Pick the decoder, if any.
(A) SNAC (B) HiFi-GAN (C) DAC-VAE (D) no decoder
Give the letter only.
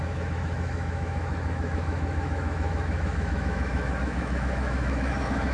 C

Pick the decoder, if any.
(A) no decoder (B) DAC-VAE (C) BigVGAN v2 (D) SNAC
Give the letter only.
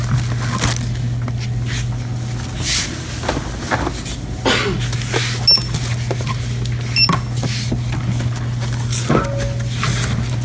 A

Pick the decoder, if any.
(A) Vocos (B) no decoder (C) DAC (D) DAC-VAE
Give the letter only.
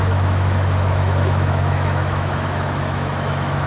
D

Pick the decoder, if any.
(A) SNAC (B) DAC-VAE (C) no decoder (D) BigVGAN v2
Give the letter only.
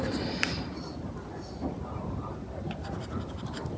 C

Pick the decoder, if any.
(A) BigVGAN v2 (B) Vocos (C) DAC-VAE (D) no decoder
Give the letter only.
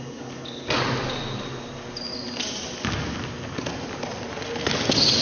D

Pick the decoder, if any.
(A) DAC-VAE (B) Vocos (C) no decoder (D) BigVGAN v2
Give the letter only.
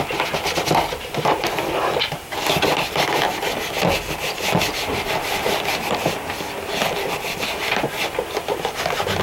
C